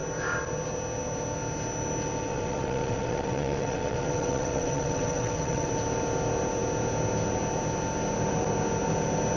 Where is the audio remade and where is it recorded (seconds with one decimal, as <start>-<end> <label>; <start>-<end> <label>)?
0.0-2.3 recorded; 2.3-5.7 remade; 5.7-9.4 recorded